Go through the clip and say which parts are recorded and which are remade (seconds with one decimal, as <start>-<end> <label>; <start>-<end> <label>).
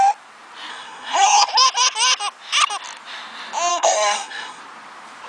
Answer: 0.0-0.7 recorded; 0.7-1.5 remade; 1.5-3.7 recorded; 3.7-4.6 remade; 4.6-5.3 recorded